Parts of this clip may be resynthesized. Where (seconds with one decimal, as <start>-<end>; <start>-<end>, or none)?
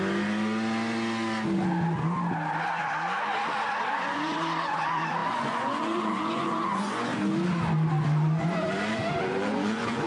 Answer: 3.9-7.1; 9.2-10.1